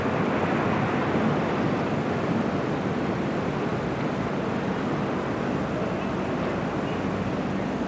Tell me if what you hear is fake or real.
real